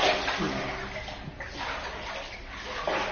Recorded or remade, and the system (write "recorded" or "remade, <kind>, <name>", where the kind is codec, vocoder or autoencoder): recorded